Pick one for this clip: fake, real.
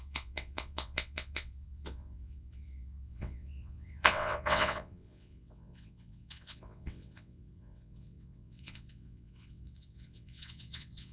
fake